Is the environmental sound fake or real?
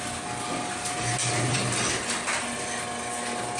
real